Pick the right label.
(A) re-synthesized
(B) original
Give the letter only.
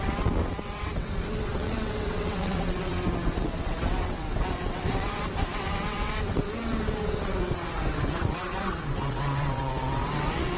A